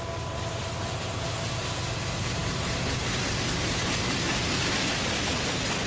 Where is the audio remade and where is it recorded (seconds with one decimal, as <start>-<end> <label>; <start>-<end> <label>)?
0.0-5.9 recorded